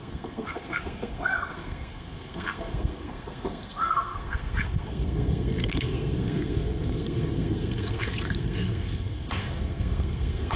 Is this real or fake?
fake